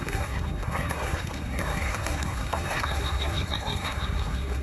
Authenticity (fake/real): fake